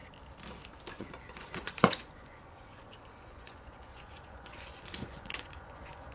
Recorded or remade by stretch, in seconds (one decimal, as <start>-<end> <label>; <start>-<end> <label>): 0.0-0.9 recorded; 0.9-6.1 remade